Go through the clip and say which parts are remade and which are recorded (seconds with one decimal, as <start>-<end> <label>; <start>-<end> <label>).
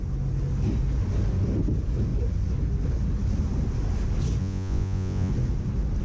0.0-4.4 recorded; 4.4-5.3 remade; 5.3-6.0 recorded